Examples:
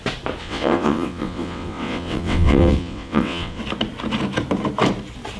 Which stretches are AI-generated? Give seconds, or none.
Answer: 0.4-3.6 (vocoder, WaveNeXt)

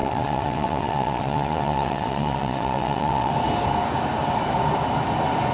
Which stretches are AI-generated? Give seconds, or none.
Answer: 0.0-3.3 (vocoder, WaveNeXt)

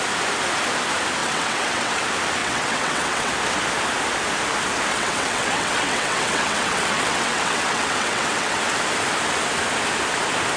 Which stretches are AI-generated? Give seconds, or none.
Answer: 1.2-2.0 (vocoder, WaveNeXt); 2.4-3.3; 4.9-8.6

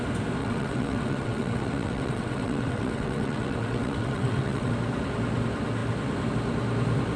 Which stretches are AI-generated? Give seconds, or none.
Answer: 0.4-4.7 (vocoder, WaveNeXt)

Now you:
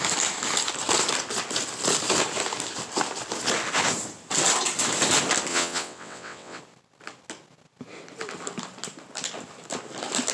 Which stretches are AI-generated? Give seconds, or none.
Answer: 5.5-6.6 (vocoder, WaveNeXt)

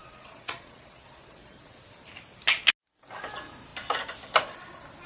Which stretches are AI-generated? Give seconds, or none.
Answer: 0.0-1.8 (vocoder, WaveNeXt)

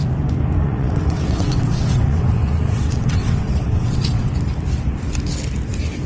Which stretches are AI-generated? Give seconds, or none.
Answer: 0.6-4.3 (vocoder, WaveNeXt)